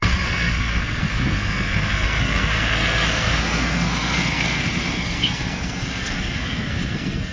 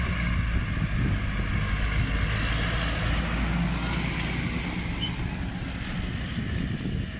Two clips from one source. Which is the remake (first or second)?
first